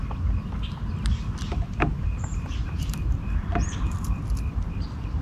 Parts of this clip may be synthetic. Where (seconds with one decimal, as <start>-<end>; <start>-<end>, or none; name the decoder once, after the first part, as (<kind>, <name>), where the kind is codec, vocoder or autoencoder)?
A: 1.9-4.2 (vocoder, BigVGAN v2)